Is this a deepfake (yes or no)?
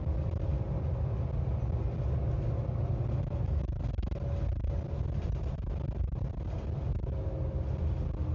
no